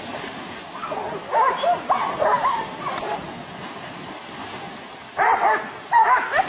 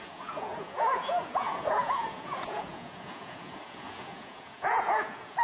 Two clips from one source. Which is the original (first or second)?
first